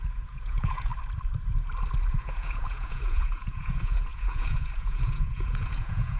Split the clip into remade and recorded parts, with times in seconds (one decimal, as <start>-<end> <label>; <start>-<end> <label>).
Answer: 0.0-0.9 remade; 0.9-2.2 recorded; 2.2-6.2 remade